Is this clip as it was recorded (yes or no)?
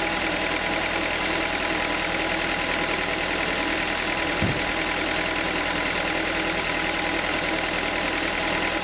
yes